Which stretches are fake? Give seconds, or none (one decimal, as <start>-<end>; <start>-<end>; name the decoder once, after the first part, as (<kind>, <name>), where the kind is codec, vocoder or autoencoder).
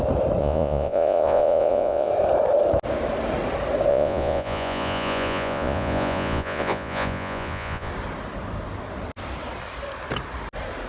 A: 0.4-2.1 (vocoder, Vocos); 3.9-7.9